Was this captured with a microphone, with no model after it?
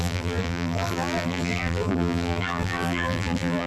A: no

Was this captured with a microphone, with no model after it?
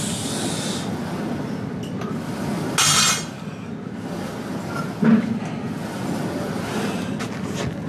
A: yes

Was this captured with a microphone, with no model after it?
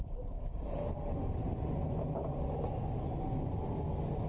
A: yes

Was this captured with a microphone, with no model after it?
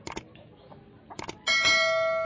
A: yes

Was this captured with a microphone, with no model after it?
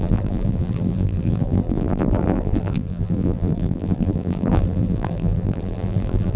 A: no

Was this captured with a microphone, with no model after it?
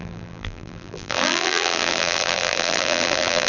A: no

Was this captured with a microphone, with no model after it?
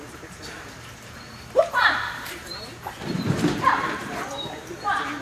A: no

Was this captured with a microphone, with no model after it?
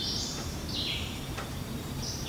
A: no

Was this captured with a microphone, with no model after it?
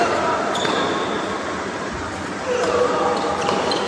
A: no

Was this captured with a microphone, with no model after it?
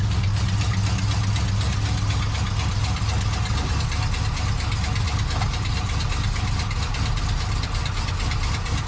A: yes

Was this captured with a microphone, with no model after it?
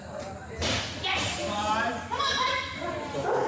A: no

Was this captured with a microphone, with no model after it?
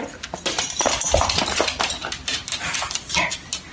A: yes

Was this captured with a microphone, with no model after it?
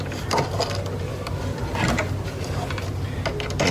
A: yes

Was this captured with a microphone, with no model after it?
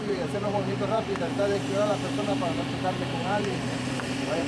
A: no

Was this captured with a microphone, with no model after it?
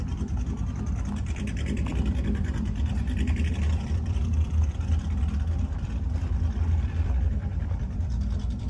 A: no